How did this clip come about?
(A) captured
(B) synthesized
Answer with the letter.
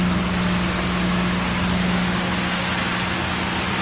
A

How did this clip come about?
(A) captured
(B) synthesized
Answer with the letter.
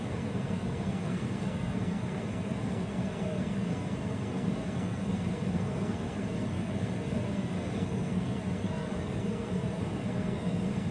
B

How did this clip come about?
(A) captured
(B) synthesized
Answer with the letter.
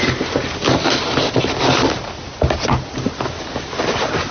A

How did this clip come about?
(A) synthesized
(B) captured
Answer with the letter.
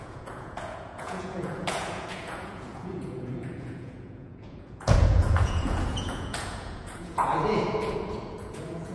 A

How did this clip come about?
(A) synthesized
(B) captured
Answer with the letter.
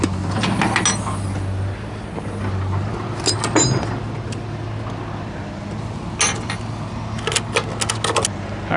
B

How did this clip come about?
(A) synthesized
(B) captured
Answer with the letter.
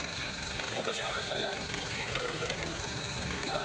A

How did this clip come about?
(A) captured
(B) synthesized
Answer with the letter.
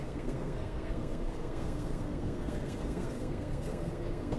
B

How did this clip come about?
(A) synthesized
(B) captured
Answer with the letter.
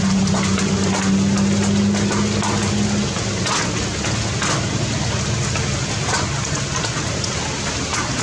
B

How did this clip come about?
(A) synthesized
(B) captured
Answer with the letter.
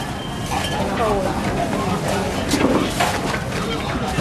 B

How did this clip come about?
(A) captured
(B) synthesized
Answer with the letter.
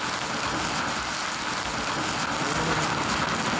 A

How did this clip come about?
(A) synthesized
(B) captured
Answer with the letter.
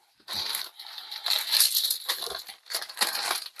B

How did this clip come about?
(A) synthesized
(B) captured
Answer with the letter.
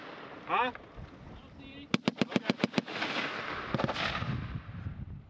B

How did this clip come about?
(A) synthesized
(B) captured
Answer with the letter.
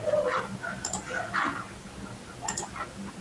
B